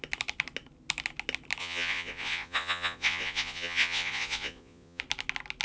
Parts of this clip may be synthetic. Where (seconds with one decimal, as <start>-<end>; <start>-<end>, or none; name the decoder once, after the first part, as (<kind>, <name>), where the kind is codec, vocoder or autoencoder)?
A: 1.6-5.0 (vocoder, Vocos)